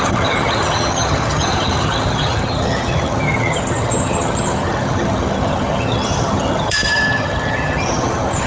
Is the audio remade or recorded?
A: remade